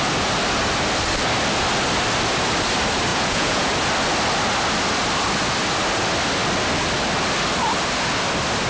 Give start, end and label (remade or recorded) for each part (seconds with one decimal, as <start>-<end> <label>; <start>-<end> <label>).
0.0-3.1 recorded; 3.1-3.7 remade; 3.7-8.7 recorded